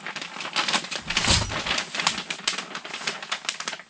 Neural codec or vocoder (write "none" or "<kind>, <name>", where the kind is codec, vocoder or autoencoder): none